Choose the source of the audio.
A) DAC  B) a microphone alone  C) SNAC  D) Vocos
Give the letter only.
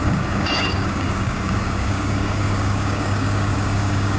A